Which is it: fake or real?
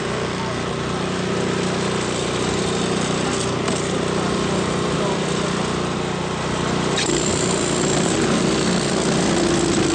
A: real